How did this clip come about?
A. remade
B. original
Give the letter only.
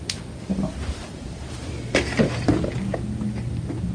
B